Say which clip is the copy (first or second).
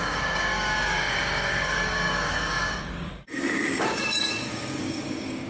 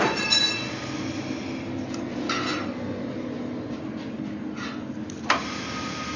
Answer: first